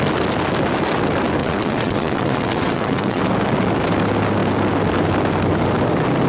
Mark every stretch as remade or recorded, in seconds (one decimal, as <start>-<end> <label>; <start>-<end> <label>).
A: 0.0-1.4 recorded; 1.4-3.2 remade; 3.2-6.3 recorded